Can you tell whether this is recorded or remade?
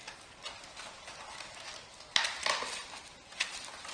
recorded